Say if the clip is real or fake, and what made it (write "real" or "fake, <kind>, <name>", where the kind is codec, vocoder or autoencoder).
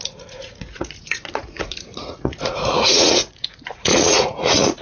fake, vocoder, Vocos